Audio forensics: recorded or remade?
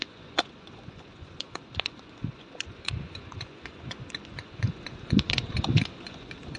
remade